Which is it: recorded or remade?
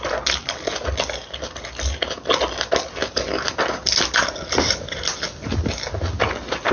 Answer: recorded